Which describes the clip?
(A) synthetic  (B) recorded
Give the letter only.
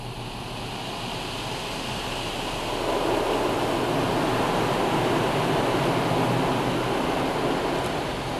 B